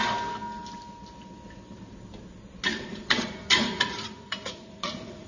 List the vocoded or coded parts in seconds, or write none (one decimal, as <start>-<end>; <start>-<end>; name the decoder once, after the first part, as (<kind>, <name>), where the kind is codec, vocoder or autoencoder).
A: 2.8-5.3 (vocoder, Vocos)